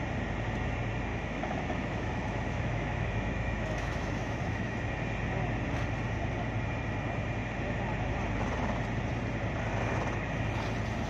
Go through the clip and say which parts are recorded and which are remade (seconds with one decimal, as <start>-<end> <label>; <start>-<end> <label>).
0.0-1.1 recorded; 1.1-4.9 remade; 4.9-11.1 recorded